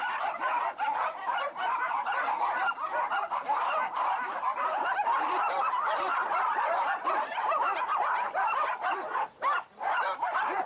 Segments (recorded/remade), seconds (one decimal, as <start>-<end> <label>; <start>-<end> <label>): 0.0-10.7 remade